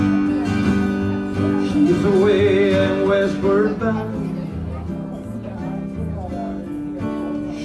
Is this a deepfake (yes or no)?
no